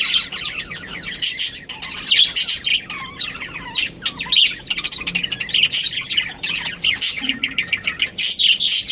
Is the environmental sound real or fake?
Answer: real